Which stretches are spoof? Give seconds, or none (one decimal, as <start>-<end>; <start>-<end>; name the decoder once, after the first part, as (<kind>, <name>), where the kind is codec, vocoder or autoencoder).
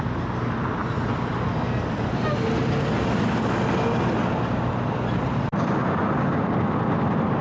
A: none